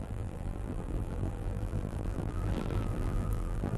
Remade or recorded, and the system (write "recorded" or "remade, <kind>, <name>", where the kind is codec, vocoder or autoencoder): remade, vocoder, BigVGAN v2